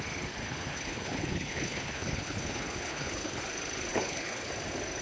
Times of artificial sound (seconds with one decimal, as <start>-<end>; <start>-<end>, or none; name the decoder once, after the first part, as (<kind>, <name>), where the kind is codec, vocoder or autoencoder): 0.4-3.4 (codec, HILCodec); 3.9-4.5